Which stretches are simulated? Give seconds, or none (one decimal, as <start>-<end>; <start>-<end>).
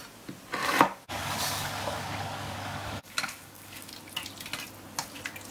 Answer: 0.6-3.9